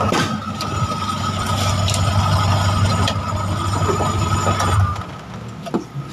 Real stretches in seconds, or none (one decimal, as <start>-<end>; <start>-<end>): 0.0-6.1